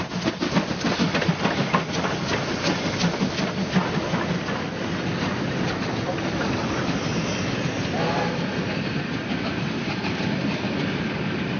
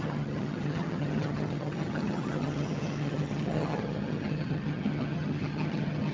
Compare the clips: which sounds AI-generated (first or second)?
second